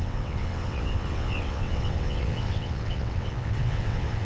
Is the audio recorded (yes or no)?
no